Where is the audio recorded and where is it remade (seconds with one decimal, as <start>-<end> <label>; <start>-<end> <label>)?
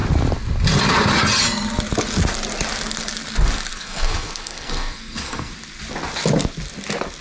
0.0-3.7 recorded; 3.7-5.5 remade; 5.5-7.2 recorded